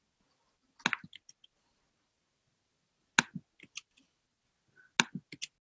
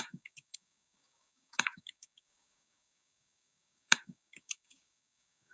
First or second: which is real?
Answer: first